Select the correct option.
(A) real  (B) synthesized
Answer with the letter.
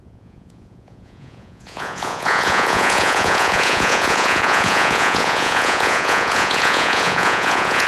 B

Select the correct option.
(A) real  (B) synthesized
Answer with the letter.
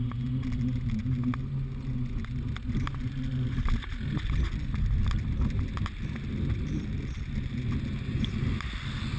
A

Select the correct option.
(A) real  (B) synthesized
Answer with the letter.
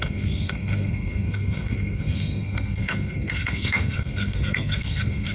B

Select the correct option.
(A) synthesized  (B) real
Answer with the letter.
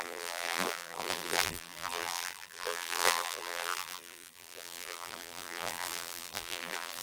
A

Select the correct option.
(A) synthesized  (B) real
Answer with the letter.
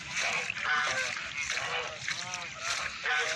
B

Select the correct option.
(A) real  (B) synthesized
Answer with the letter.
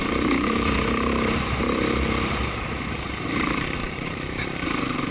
B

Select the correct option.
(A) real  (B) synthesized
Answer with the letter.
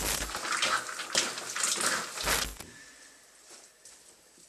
A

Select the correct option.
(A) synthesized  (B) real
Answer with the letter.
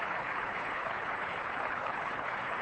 A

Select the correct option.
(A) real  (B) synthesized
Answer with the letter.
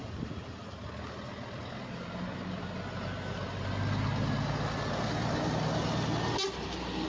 A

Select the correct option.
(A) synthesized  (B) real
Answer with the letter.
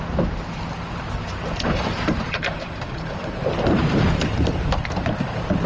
A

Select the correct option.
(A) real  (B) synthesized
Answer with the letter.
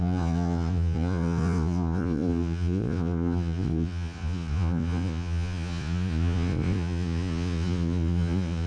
B